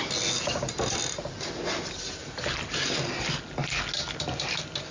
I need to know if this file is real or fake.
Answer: real